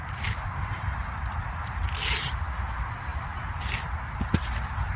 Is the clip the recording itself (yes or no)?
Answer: yes